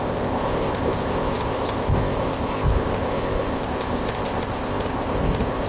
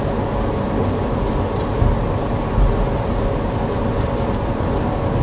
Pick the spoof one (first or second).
first